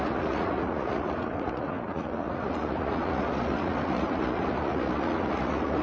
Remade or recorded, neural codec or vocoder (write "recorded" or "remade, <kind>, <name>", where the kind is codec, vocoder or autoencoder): remade, vocoder, Vocos